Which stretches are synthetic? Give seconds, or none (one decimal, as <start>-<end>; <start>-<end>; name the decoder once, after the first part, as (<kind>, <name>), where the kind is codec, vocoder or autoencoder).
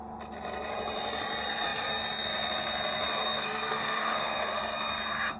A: 3.2-4.6 (codec, SNAC)